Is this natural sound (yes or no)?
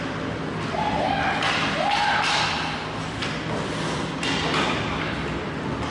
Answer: yes